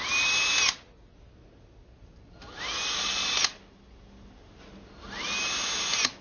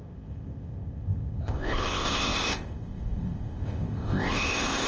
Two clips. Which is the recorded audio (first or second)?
first